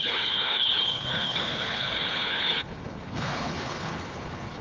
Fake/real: fake